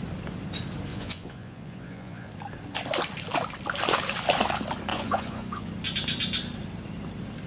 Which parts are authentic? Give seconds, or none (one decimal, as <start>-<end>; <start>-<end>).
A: 0.0-0.9; 2.3-4.9; 5.7-7.5